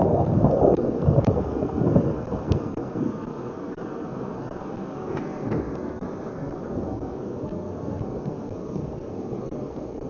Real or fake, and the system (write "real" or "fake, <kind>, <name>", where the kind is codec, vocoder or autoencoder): fake, codec, SNAC